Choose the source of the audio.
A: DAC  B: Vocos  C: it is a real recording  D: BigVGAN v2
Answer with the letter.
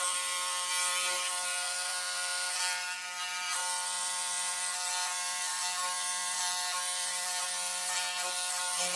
D